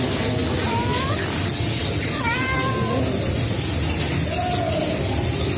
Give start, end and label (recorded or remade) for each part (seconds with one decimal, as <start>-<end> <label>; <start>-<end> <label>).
0.0-5.6 recorded